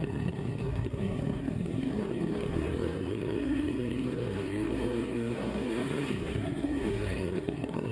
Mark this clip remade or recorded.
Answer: remade